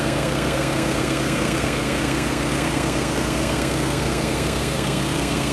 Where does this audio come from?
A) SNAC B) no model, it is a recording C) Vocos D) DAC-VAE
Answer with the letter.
A